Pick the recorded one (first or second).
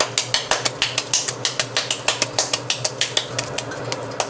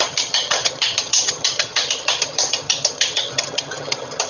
first